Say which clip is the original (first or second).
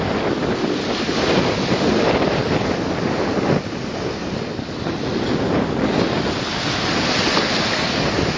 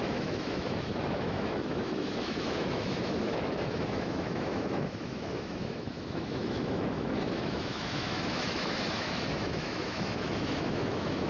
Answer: first